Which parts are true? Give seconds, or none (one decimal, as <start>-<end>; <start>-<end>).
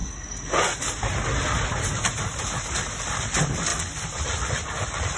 0.0-5.2